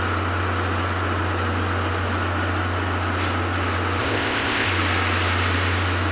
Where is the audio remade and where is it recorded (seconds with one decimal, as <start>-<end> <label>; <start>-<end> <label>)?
0.0-4.0 recorded; 4.0-4.7 remade; 4.7-6.1 recorded